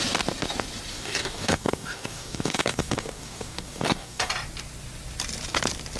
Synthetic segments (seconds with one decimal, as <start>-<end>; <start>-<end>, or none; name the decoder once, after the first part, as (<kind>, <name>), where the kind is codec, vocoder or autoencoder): 0.9-4.3 (codec, DAC)